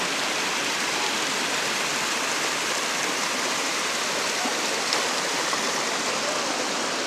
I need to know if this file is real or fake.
real